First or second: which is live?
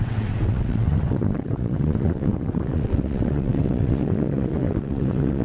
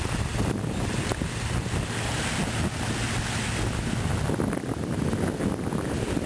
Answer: second